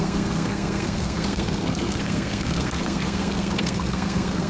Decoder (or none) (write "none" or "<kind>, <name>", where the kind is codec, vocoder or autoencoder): codec, SNAC